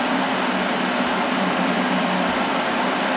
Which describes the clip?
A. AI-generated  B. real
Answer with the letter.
B